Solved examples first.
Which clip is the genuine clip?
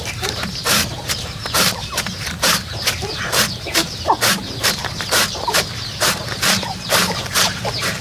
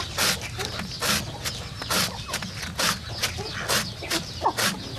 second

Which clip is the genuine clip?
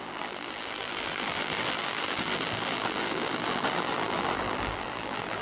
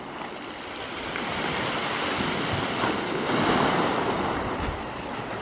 second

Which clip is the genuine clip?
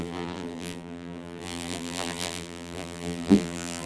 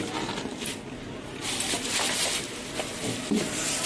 second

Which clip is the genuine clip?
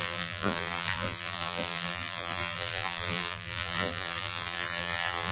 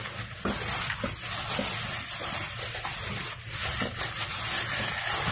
second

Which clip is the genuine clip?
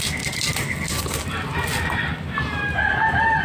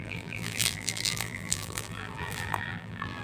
first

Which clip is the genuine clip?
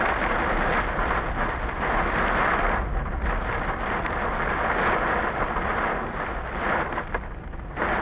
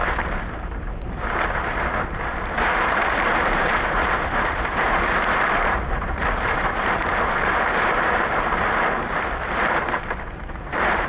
first